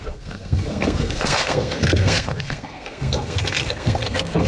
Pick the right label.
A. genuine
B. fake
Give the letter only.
B